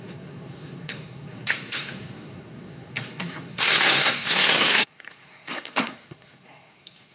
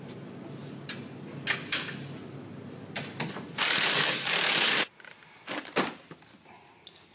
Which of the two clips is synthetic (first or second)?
first